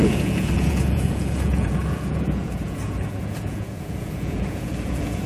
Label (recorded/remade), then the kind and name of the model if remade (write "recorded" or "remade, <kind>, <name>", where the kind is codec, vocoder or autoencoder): remade, vocoder, Vocos